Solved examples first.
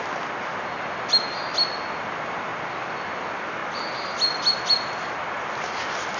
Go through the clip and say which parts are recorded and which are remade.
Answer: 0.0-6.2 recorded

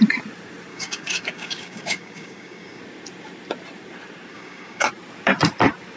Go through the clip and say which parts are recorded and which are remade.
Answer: 0.0-0.7 recorded; 0.7-2.8 remade; 2.8-4.3 recorded; 4.3-4.9 remade; 4.9-6.0 recorded

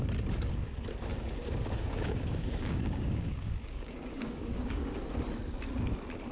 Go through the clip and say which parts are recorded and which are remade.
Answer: 0.0-1.1 recorded; 1.1-4.9 remade; 4.9-6.3 recorded